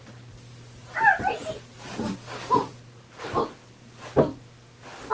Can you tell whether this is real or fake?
real